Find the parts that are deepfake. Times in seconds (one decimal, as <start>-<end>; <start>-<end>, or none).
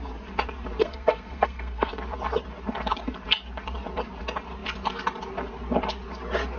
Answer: 0.8-1.9